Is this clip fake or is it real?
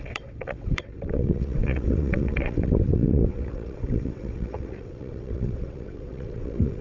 fake